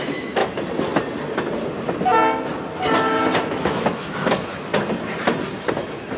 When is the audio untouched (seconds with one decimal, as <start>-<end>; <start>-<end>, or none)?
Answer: 0.4-3.6; 4.7-5.7